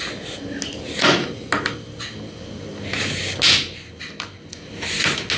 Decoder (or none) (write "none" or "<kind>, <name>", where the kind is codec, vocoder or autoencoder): none